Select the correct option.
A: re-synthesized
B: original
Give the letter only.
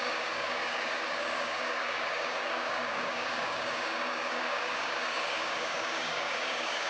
A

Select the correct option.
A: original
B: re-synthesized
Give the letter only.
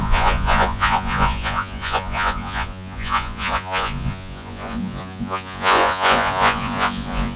B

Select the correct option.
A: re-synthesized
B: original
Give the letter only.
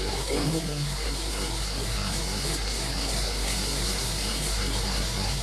A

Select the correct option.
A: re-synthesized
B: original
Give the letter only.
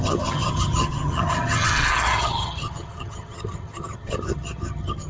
A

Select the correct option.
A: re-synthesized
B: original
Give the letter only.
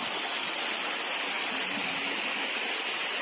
B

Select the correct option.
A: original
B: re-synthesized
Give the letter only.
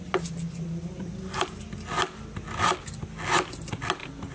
A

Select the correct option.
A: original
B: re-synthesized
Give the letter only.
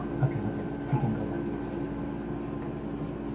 A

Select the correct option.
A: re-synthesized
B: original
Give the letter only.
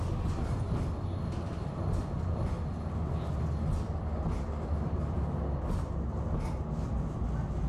B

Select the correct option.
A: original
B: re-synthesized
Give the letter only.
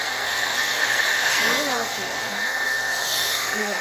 B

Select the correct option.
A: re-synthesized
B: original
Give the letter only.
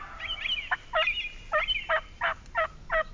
B